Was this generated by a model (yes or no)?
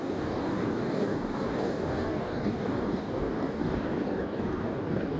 yes